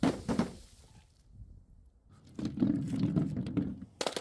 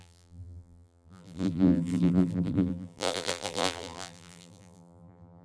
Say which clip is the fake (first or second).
second